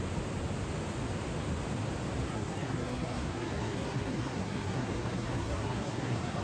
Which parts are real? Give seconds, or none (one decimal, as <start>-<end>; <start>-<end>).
0.0-2.3

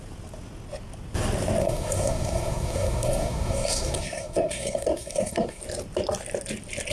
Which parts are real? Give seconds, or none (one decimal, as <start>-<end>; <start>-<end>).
0.0-1.6; 5.6-6.9

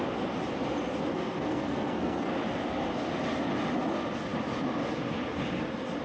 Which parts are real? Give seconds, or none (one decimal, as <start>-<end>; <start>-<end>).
0.0-1.1; 2.3-6.0

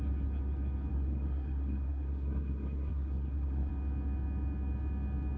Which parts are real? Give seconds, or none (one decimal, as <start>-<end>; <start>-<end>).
0.0-0.9; 3.7-5.4

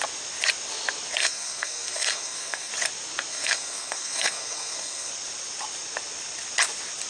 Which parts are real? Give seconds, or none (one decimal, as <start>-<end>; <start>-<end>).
0.0-1.2; 2.7-3.3; 5.1-7.1

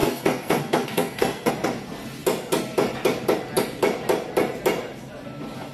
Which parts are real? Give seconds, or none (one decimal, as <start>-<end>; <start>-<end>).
1.5-5.7